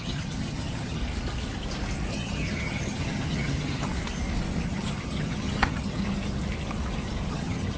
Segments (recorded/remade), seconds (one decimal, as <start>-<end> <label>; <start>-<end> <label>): 0.0-1.0 remade; 1.0-2.1 recorded; 2.1-3.9 remade; 3.9-4.7 recorded; 4.7-6.0 remade; 6.0-7.3 recorded; 7.3-7.8 remade